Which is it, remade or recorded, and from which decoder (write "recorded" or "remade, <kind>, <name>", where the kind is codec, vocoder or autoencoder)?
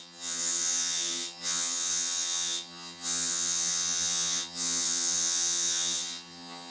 remade, vocoder, HiFi-GAN